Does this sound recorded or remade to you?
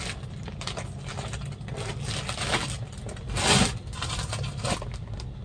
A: recorded